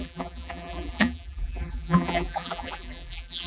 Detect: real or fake fake